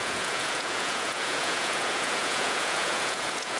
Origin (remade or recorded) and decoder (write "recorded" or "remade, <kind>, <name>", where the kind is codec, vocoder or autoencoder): remade, vocoder, Vocos